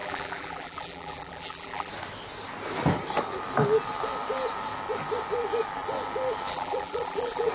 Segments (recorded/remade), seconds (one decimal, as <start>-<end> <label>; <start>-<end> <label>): 0.0-1.9 remade; 1.9-6.5 recorded; 6.5-7.5 remade